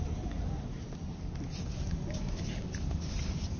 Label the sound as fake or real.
real